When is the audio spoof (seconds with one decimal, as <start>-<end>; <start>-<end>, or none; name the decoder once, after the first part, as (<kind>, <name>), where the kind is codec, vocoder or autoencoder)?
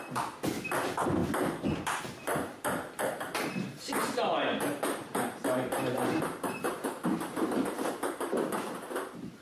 4.0-9.4 (vocoder, BigVGAN v2)